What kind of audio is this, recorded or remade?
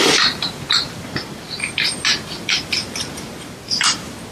remade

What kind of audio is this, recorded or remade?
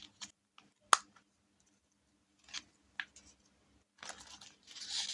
recorded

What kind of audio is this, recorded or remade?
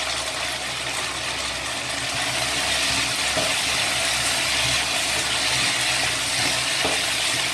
recorded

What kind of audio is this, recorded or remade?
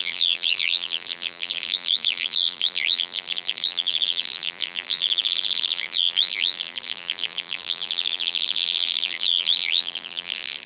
remade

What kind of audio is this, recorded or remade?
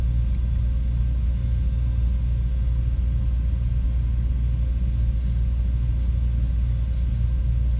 recorded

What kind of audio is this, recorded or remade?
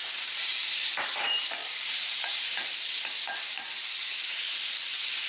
remade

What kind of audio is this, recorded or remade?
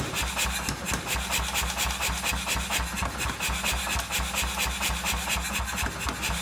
recorded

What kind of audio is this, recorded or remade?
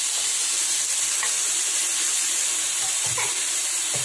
recorded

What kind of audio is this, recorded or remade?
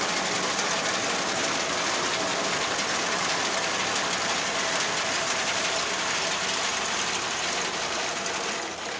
recorded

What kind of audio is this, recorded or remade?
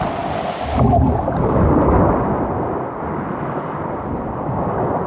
recorded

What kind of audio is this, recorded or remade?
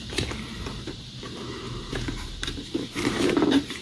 remade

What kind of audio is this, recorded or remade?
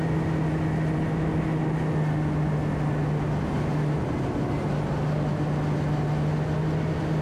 recorded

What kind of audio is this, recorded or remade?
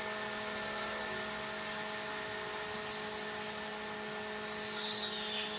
recorded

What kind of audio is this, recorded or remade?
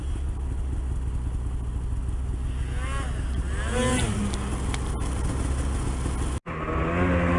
recorded